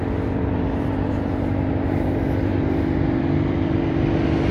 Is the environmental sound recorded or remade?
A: recorded